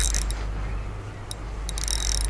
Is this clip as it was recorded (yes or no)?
yes